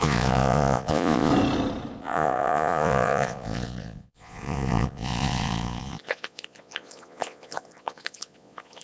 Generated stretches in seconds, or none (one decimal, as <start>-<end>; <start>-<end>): 0.0-1.3; 2.0-8.8